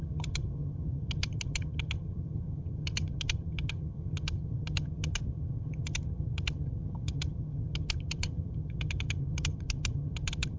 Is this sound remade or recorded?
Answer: remade